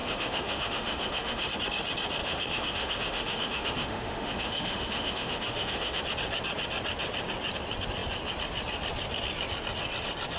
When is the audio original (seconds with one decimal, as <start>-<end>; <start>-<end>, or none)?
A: 1.5-2.2; 6.0-10.4